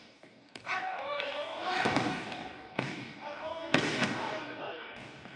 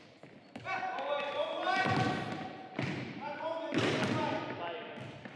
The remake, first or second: first